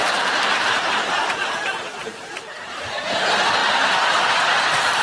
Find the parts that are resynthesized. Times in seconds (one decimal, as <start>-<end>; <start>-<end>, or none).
0.0-3.0